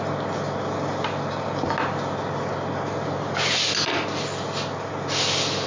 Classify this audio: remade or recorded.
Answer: recorded